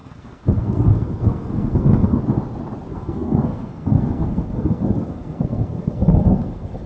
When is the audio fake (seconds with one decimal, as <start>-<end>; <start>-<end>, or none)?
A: 0.0-2.2; 2.9-6.9